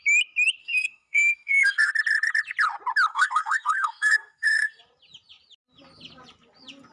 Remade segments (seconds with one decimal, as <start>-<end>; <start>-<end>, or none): 0.6-1.9; 3.1-4.8